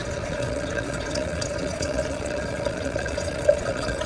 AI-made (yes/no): yes